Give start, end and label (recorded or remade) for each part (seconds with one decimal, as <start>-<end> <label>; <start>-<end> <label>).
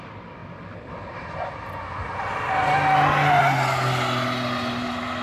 0.0-5.2 recorded